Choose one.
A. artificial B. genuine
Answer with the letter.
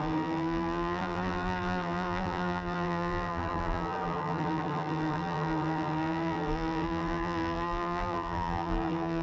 A